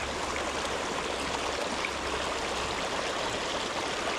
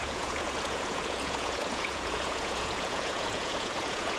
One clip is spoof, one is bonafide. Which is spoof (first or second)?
second